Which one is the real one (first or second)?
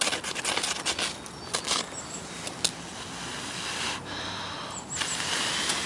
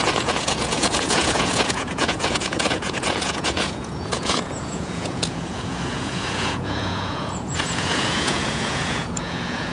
first